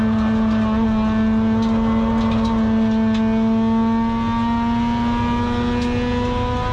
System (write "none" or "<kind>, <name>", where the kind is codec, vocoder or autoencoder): none